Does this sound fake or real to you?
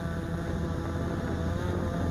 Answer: real